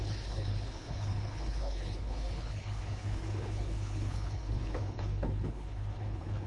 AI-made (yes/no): yes